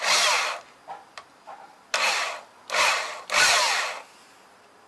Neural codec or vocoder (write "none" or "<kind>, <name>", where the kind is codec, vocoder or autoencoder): none